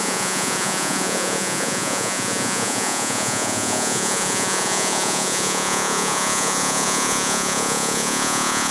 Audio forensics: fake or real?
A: fake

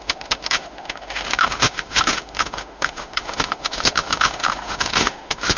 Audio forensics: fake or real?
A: fake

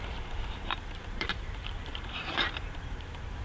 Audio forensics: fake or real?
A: fake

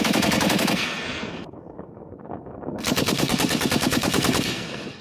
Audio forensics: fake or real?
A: fake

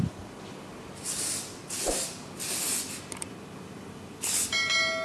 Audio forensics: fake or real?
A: real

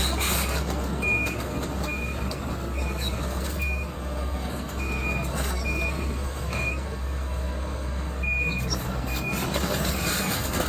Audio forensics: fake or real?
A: fake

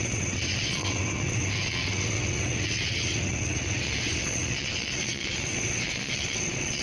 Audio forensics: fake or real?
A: fake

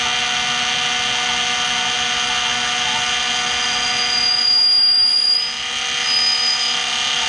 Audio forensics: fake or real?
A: real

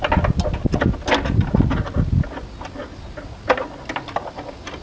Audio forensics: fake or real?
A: real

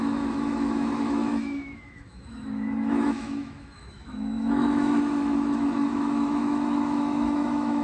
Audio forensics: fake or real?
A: fake